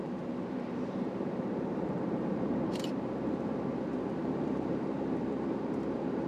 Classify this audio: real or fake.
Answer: fake